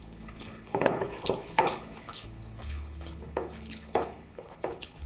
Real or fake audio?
fake